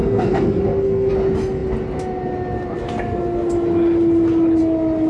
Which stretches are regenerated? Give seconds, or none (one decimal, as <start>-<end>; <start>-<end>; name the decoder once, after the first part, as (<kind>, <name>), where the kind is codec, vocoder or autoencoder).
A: 0.0-1.1 (codec, SNAC)